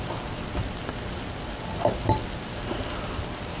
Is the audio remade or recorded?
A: recorded